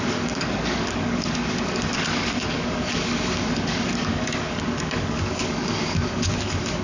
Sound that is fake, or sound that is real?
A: fake